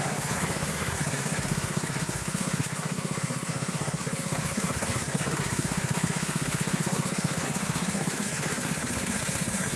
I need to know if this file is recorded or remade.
remade